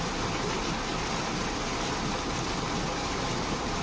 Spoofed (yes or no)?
no